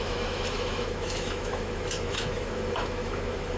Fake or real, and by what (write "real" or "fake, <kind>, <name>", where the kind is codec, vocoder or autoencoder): fake, autoencoder, DAC-VAE